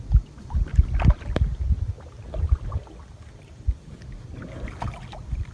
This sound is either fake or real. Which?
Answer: real